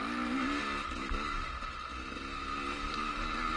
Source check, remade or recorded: recorded